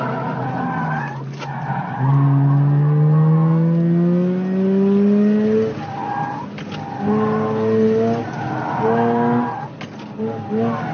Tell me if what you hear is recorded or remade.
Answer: recorded